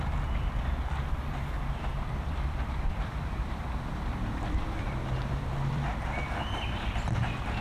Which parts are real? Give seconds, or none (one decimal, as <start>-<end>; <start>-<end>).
0.0-1.9; 6.0-7.6